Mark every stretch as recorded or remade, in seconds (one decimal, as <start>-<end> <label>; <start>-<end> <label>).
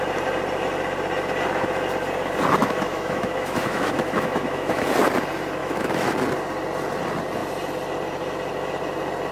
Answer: 0.0-2.6 recorded; 2.6-4.8 remade; 4.8-5.6 recorded; 5.6-6.1 remade; 6.1-9.3 recorded